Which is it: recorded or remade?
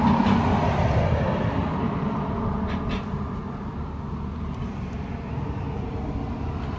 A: recorded